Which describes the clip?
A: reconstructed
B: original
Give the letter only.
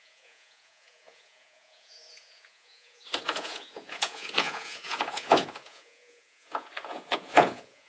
A